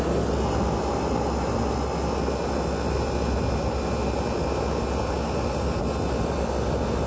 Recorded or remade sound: recorded